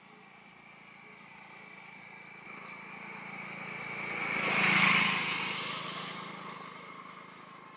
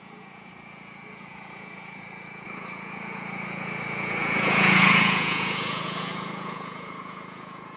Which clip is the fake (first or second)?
second